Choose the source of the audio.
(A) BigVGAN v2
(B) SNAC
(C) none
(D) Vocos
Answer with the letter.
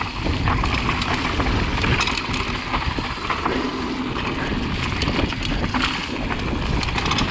C